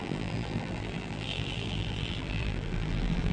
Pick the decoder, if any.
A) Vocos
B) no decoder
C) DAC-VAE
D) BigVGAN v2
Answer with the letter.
D